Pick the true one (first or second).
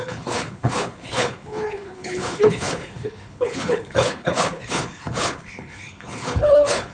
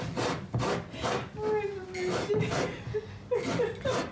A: second